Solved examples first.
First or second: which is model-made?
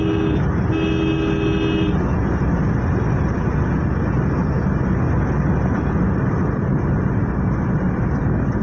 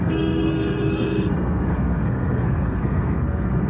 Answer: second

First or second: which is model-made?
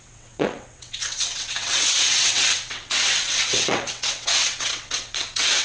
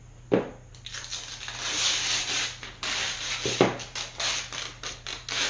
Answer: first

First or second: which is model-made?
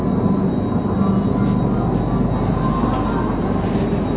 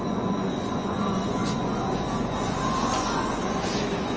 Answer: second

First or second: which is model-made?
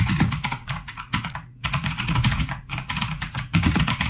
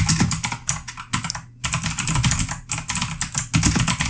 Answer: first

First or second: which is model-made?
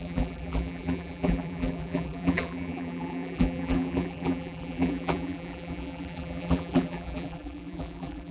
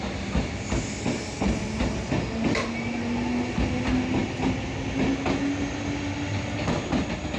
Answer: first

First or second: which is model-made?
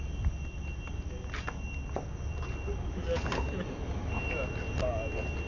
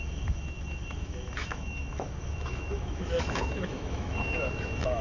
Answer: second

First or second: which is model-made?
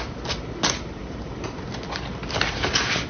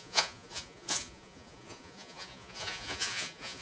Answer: second